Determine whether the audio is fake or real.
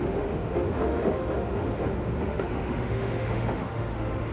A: fake